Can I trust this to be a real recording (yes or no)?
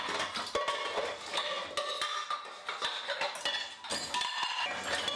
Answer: yes